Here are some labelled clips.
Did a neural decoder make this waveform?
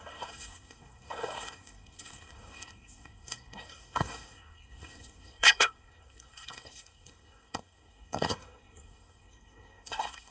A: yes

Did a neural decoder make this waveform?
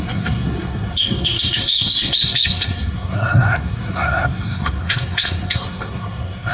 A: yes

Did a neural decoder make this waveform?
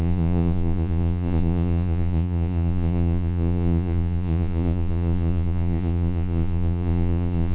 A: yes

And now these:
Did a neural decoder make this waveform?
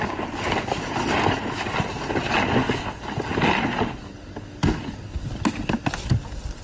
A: no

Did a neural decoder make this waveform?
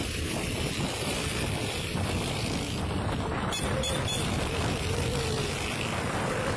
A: no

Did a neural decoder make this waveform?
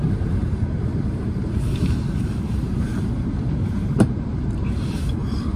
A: yes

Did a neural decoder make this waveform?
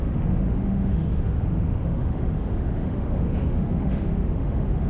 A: yes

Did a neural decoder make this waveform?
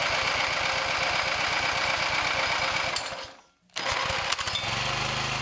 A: no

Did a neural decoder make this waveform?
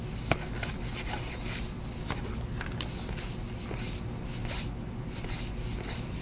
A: no